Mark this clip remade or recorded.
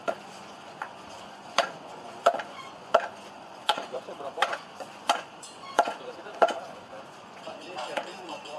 remade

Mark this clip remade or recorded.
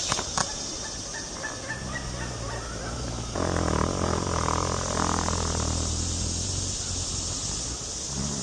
recorded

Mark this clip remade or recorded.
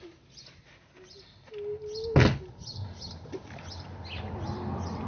recorded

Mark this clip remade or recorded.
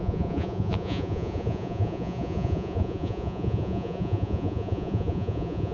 remade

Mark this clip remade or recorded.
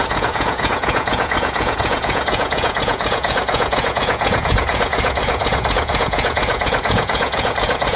remade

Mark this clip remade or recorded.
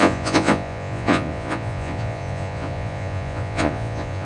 remade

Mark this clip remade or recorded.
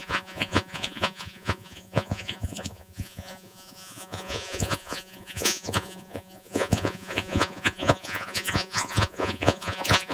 remade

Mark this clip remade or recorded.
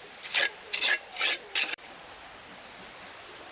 recorded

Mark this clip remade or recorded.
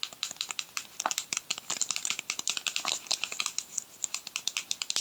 recorded